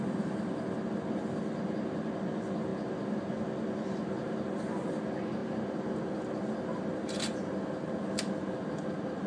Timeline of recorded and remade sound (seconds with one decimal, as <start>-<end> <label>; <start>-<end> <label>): 0.0-9.3 recorded